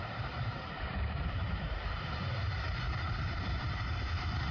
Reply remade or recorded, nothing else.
remade